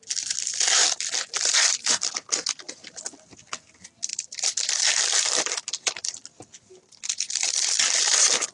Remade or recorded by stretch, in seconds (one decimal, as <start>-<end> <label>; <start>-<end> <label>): 0.0-0.8 recorded; 0.8-2.1 remade; 2.1-4.1 recorded; 4.1-8.5 remade